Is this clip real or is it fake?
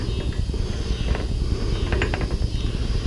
real